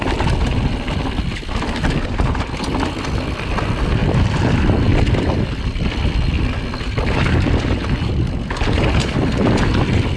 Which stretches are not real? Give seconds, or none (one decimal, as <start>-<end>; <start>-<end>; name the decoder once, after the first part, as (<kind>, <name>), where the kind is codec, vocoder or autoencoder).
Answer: 4.0-4.6 (vocoder, BigVGAN v2)